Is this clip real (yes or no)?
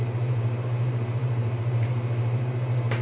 no